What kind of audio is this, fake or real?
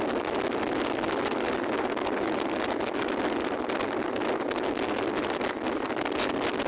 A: real